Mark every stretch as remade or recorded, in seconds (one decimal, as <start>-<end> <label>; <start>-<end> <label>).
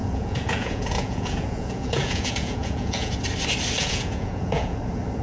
0.0-3.1 remade; 3.1-3.8 recorded; 3.8-4.8 remade; 4.8-5.2 recorded